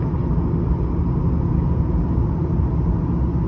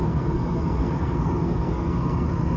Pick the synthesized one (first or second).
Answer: second